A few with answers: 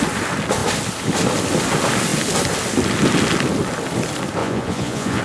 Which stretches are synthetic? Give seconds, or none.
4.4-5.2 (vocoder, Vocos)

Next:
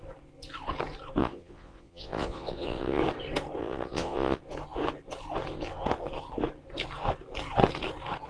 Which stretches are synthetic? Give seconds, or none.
1.2-3.0 (vocoder, Vocos); 3.6-4.4

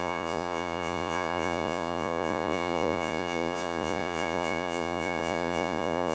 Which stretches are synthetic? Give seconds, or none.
0.0-6.1 (vocoder, Vocos)